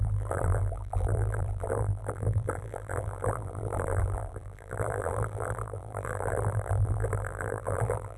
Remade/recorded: remade